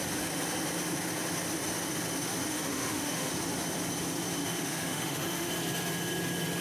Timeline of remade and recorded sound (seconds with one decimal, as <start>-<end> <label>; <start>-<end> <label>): 0.0-2.5 recorded; 2.5-3.3 remade; 3.3-4.4 recorded; 4.4-5.5 remade; 5.5-6.6 recorded